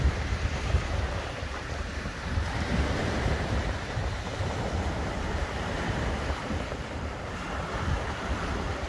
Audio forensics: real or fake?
fake